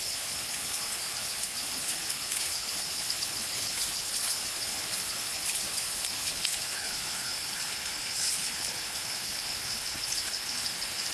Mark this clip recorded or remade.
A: remade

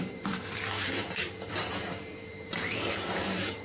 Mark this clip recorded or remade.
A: remade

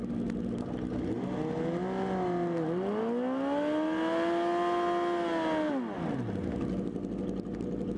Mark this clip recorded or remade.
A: recorded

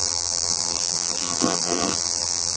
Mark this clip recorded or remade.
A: remade